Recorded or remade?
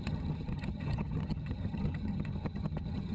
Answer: remade